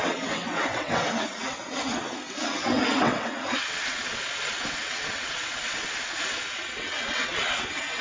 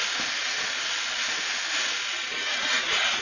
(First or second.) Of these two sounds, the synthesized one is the first